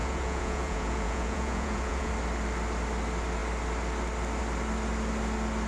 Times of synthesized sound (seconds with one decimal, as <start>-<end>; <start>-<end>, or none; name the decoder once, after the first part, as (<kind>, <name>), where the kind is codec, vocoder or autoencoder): 0.0-2.1 (vocoder, Vocos)